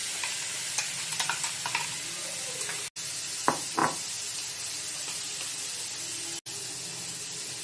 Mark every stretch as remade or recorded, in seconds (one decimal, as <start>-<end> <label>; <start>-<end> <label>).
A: 0.0-7.6 recorded